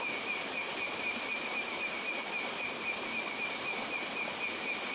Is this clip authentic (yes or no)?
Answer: yes